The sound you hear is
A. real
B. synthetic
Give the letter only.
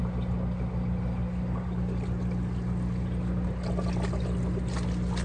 A